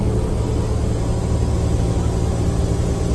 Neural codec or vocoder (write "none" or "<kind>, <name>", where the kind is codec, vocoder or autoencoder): none